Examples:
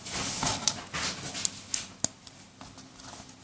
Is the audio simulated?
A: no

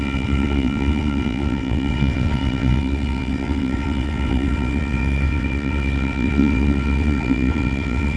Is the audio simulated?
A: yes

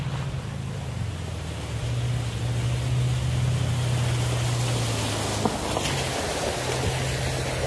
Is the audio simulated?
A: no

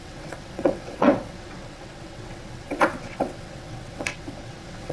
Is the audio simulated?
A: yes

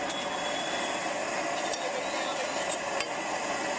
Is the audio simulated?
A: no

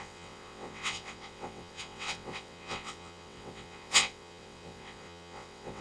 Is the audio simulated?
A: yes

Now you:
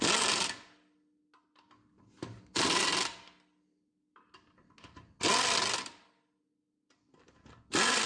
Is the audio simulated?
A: no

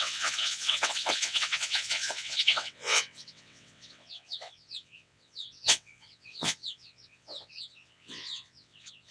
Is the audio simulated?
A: yes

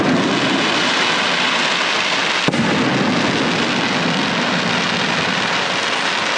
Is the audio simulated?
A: no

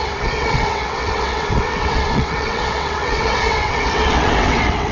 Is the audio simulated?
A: yes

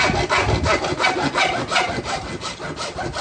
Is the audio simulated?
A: no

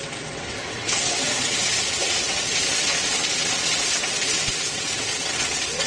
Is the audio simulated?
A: yes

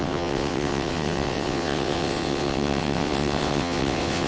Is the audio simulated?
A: yes